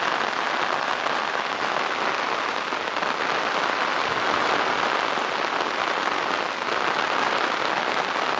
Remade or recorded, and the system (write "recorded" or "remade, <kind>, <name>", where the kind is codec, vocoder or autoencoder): recorded